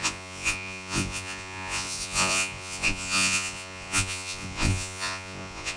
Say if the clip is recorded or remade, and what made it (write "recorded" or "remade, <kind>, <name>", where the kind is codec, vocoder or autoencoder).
remade, vocoder, Vocos